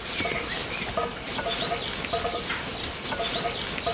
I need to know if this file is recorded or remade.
recorded